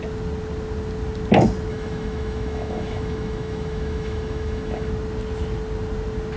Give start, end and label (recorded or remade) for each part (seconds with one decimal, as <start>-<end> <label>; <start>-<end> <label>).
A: 0.0-1.7 recorded; 1.7-4.9 remade; 4.9-6.4 recorded

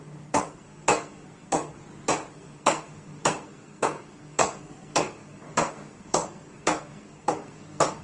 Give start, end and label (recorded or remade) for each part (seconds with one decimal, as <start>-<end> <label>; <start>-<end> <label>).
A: 0.0-1.8 remade; 1.8-2.3 recorded; 2.3-8.0 remade

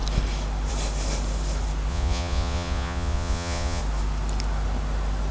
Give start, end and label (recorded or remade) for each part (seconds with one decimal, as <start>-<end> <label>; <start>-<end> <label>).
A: 0.0-1.9 recorded; 1.9-3.8 remade; 3.8-5.3 recorded

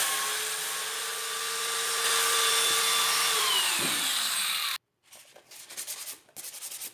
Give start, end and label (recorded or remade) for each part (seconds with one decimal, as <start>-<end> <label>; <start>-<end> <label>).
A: 0.0-6.9 recorded

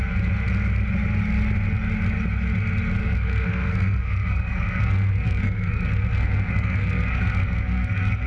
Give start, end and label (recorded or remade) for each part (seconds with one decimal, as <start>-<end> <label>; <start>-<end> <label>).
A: 0.0-3.0 recorded; 3.0-8.3 remade

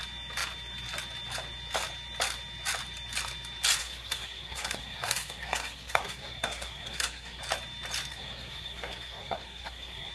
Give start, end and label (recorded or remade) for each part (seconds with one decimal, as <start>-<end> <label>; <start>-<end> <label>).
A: 0.0-3.8 recorded; 3.8-7.4 remade; 7.4-8.1 recorded; 8.1-10.1 remade

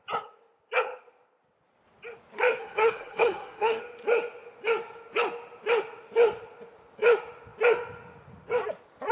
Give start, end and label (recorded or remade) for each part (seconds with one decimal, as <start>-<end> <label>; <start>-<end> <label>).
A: 0.0-2.6 recorded; 2.6-3.8 remade; 3.8-9.1 recorded

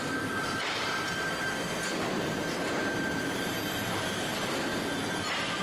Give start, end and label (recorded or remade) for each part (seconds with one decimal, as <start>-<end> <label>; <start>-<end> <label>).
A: 0.0-1.4 remade; 1.4-2.2 recorded; 2.2-4.7 remade; 4.7-5.6 recorded